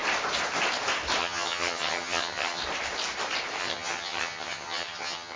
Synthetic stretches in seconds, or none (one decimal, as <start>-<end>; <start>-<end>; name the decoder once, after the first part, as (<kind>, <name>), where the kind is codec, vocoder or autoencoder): 1.2-2.6 (vocoder, HiFi-GAN); 3.6-5.4